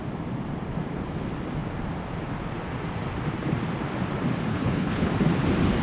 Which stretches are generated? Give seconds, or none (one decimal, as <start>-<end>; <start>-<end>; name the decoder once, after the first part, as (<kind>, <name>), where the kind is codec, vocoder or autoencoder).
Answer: 4.5-5.1 (codec, HILCodec)

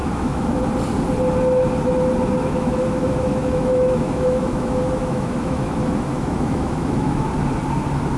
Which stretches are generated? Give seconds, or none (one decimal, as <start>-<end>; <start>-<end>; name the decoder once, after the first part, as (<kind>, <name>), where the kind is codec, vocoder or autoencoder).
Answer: 0.0-0.6 (autoencoder, DAC-VAE); 2.4-7.3

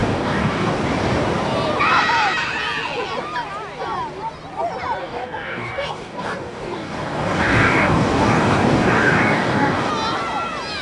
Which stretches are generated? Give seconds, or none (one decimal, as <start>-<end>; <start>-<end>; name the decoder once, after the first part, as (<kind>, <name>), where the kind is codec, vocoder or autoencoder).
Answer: 0.0-0.8 (codec, DAC); 5.0-9.9

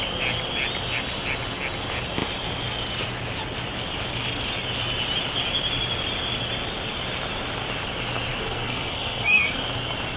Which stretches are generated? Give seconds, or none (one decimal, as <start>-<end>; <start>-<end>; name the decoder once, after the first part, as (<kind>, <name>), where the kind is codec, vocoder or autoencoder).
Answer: 8.3-9.6 (codec, SNAC)

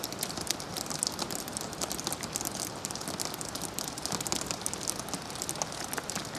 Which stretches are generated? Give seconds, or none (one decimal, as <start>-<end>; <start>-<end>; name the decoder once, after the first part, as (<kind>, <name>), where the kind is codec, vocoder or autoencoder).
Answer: none

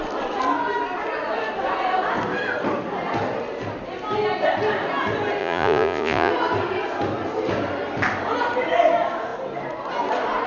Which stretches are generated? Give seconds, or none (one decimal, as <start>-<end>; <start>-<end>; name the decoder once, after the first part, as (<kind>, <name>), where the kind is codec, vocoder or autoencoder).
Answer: 5.4-6.3 (vocoder, Vocos)

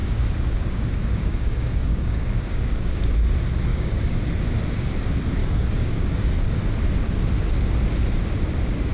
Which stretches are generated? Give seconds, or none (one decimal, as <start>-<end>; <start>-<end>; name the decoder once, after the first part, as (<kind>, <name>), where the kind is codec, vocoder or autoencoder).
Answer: 0.0-3.0 (codec, DAC); 3.7-4.2; 5.4-6.6